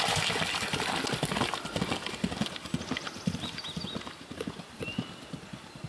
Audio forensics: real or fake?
real